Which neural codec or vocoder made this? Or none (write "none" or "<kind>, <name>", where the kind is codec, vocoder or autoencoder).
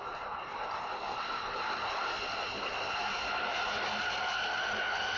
none